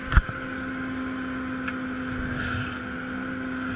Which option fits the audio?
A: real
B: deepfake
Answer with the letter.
A